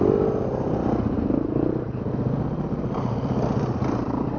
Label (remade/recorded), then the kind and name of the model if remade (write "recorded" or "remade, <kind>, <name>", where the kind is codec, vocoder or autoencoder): recorded